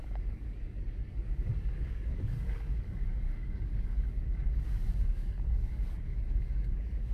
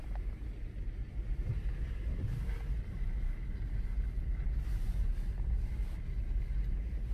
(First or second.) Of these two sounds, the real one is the second